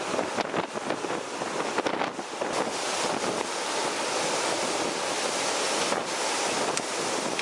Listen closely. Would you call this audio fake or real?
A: real